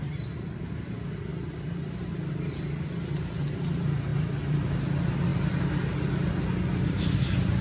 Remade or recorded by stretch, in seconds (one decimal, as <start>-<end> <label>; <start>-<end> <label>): 0.0-4.1 recorded; 4.1-4.8 remade; 4.8-7.6 recorded